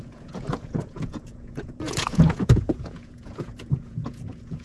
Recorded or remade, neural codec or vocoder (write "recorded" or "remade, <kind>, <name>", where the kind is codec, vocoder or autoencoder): remade, vocoder, Vocos